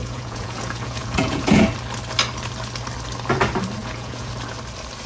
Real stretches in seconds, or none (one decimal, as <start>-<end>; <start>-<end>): 1.6-3.8; 4.3-5.1